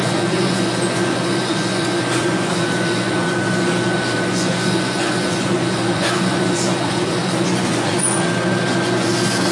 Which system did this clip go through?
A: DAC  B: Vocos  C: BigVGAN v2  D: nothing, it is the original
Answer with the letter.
B